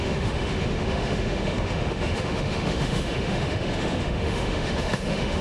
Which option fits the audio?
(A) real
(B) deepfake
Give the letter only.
B